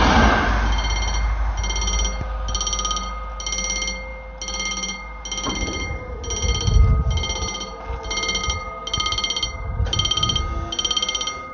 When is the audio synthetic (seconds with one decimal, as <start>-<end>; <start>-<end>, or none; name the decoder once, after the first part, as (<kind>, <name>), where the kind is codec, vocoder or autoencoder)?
none